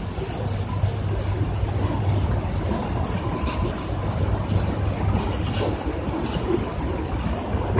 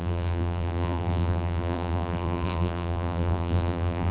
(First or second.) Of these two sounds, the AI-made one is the second